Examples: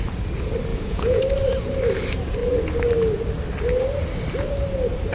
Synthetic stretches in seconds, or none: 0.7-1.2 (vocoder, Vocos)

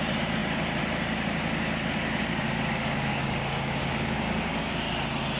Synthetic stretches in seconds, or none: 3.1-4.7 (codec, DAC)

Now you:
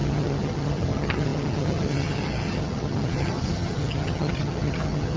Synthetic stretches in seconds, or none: 0.0-5.2 (vocoder, HiFi-GAN)

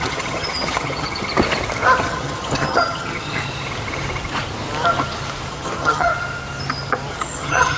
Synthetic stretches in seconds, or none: 0.0-1.3 (vocoder, HiFi-GAN); 2.0-3.4; 5.5-6.1; 7.1-7.8